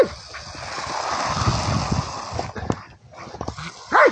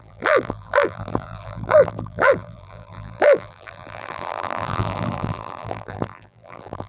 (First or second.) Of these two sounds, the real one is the first